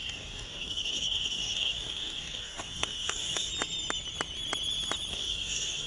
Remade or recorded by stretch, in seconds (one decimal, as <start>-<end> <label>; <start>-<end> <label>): 0.0-3.5 remade; 3.5-5.1 recorded; 5.1-5.9 remade